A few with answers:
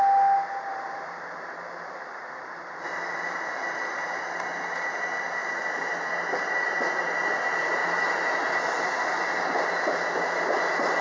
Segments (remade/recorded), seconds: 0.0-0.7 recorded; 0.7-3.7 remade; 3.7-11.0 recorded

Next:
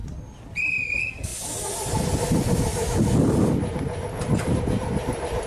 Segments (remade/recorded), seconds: 0.0-1.3 remade; 1.3-4.6 recorded; 4.6-5.5 remade

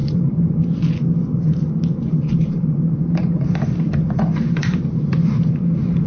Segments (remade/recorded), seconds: 0.0-0.8 remade; 0.8-2.1 recorded; 2.1-6.1 remade

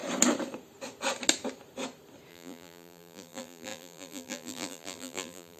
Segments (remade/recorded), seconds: 0.0-2.3 recorded; 2.3-5.6 remade

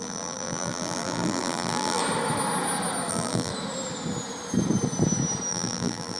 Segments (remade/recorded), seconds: 0.0-2.0 remade; 2.0-3.1 recorded; 3.1-3.5 remade; 3.5-5.5 recorded; 5.5-6.2 remade

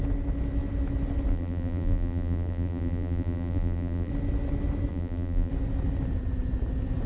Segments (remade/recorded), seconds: 0.0-1.3 recorded; 1.3-4.1 remade; 4.1-4.9 recorded; 4.9-5.5 remade; 5.5-7.1 recorded

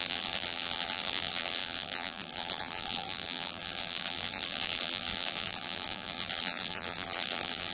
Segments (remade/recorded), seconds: 0.0-7.7 remade

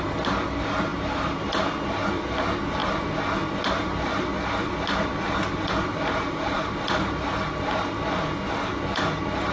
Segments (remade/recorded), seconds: 0.0-0.9 recorded; 0.9-1.5 remade; 1.5-9.5 recorded